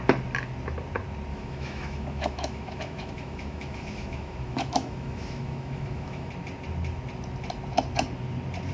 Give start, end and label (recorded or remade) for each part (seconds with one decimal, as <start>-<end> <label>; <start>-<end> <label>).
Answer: 0.0-1.3 recorded; 1.3-6.3 remade; 6.3-8.7 recorded